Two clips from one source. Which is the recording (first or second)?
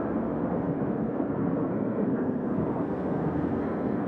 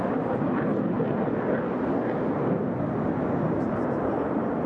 second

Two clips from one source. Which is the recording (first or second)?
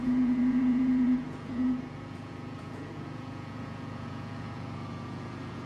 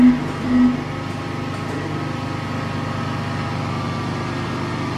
second